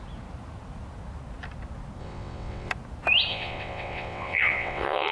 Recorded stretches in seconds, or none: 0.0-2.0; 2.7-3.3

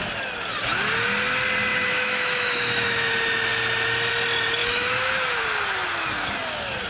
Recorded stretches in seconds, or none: 0.0-1.7; 3.1-4.6; 5.4-6.9

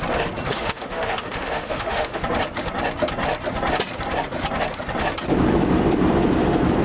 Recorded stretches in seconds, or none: 0.0-0.5; 2.2-6.8

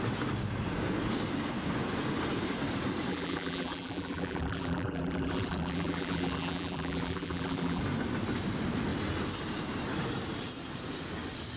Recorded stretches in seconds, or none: 0.0-3.1; 7.8-11.6

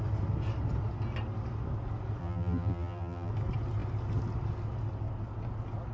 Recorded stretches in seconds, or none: 0.0-2.2; 3.3-5.9

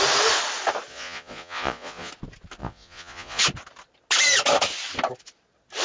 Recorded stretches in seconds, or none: 0.0-0.9; 2.1-2.6; 3.4-5.8